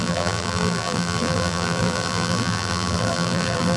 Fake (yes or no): yes